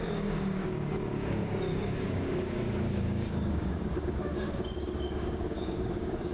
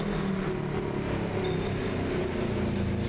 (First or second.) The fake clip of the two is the first